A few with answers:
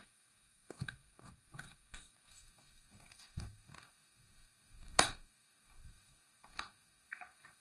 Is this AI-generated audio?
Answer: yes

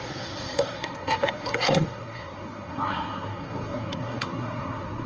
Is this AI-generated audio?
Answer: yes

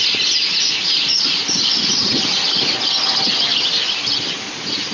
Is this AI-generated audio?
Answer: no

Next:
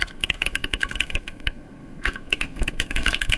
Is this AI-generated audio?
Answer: yes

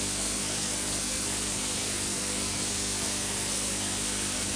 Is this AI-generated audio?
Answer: yes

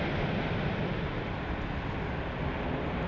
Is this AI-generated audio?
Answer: no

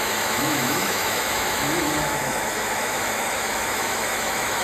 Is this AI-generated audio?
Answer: yes